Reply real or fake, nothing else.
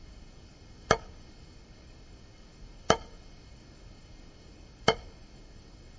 fake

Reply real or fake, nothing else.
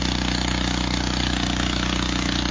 real